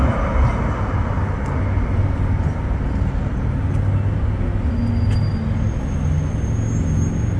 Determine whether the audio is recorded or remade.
recorded